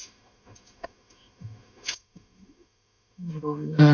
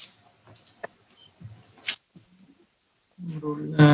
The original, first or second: second